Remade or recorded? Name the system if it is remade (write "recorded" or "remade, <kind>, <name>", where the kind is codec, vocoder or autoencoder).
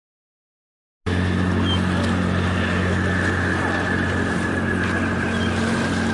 recorded